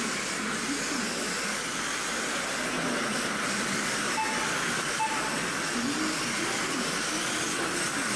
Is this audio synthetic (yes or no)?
no